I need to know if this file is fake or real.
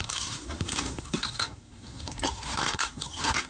fake